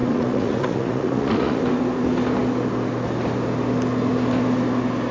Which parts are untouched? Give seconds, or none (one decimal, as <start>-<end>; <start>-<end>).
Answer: 1.6-5.1